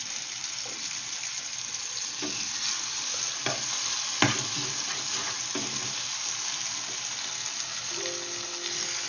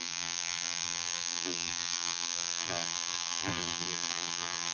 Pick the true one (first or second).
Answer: first